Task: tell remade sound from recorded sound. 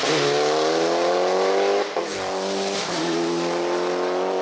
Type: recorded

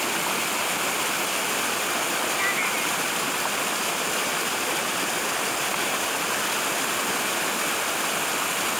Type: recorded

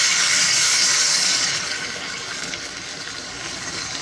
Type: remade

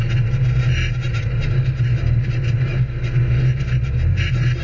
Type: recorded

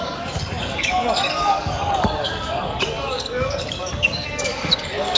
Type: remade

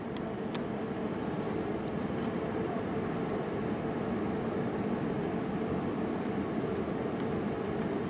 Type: recorded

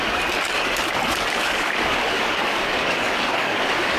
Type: remade